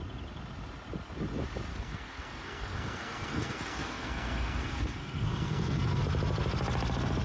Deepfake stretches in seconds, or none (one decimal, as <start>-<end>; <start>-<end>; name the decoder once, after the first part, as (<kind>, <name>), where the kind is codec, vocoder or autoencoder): 1.7-6.0 (codec, SNAC)